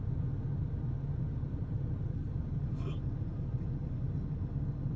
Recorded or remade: recorded